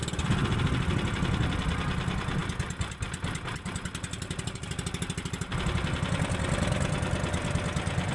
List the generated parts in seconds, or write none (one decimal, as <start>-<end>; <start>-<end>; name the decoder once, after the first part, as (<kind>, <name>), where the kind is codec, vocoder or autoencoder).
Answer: none